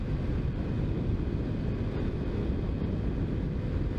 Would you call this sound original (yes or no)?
yes